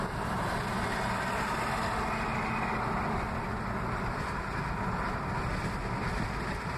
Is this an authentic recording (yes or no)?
yes